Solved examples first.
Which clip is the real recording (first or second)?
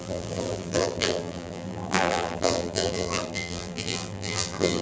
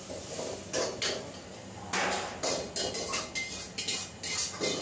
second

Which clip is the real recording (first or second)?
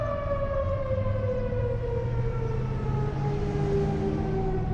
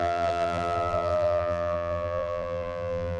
first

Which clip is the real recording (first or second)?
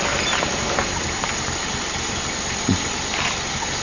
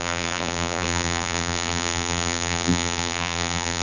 first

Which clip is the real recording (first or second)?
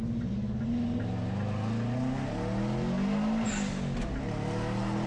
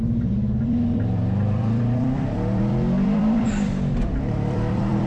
first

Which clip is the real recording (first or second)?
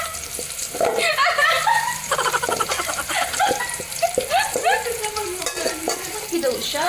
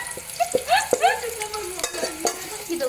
second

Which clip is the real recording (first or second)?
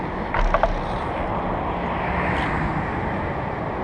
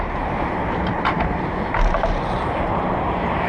first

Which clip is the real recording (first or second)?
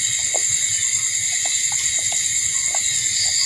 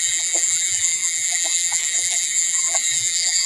first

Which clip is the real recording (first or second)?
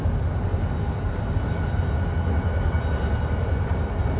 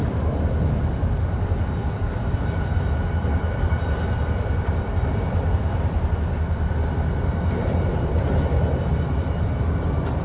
first